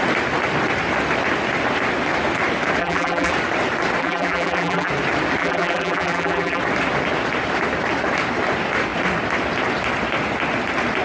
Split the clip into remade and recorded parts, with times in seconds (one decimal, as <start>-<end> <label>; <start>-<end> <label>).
0.0-2.8 recorded; 2.8-3.3 remade; 3.3-4.0 recorded; 4.0-4.9 remade; 4.9-5.4 recorded; 5.4-6.6 remade; 6.6-11.0 recorded